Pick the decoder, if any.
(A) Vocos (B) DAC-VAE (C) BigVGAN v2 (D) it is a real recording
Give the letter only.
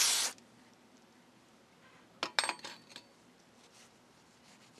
D